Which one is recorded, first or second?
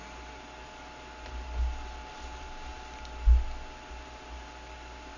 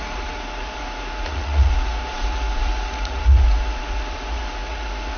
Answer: first